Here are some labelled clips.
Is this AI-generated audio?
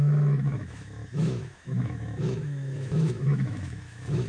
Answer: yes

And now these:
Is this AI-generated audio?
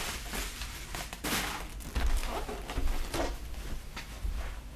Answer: no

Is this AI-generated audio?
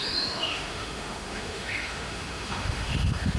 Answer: yes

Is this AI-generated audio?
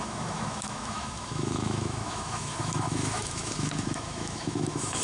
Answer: yes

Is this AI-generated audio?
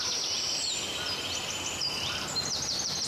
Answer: no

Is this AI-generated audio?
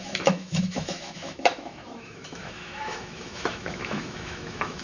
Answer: yes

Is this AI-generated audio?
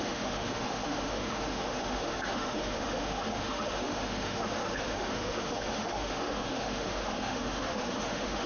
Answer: yes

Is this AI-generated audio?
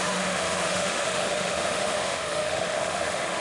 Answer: yes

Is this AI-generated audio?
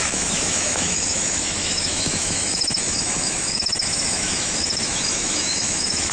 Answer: yes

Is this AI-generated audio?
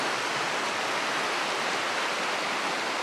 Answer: no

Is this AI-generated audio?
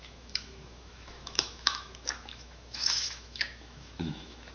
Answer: yes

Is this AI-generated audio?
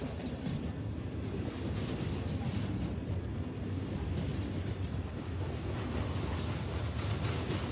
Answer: no